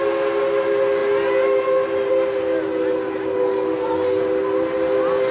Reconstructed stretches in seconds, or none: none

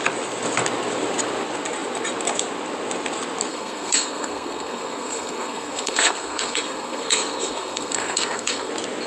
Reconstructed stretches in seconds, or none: 3.5-8.7 (codec, SNAC)

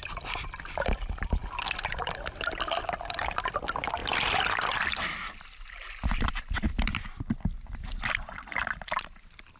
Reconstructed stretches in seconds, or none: none

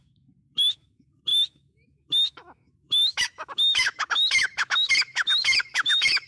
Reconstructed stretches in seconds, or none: 0.0-6.3 (autoencoder, DAC-VAE)

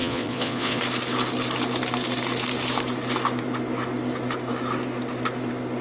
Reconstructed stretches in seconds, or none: 0.0-0.8 (vocoder, Vocos)

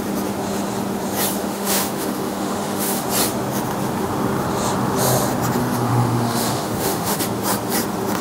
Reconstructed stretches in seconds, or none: 1.4-3.0 (autoencoder, DAC-VAE); 5.6-7.2

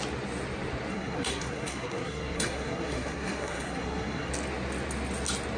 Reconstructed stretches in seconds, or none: 0.9-4.3 (codec, SNAC)

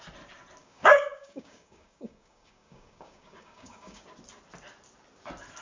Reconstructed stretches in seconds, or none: 0.6-4.0 (codec, DAC)